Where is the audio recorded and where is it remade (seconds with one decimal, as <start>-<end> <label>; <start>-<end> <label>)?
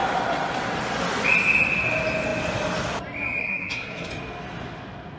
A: 0.0-3.4 recorded; 3.4-4.1 remade; 4.1-5.2 recorded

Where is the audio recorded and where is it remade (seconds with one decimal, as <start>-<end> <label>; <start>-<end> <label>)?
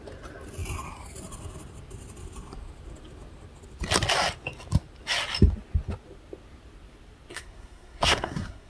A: 0.0-7.3 recorded; 7.3-8.7 remade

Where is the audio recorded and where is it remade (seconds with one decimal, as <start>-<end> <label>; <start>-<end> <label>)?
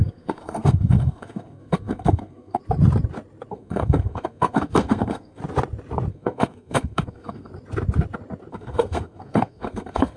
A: 0.0-2.6 remade; 2.6-3.5 recorded; 3.5-5.4 remade; 5.4-6.1 recorded; 6.1-7.5 remade; 7.5-8.5 recorded; 8.5-10.2 remade